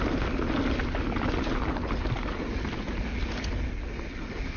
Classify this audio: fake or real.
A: real